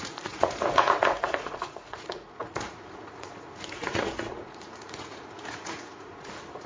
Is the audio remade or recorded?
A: remade